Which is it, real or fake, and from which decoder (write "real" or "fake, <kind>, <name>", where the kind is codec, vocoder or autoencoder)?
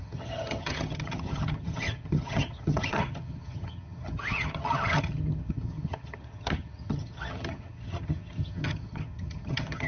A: fake, vocoder, HiFi-GAN